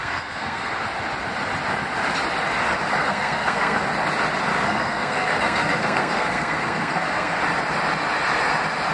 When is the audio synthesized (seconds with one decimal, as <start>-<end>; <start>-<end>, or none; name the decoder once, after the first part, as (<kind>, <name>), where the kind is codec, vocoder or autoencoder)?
0.0-0.7 (codec, SNAC); 3.0-3.8; 4.5-7.4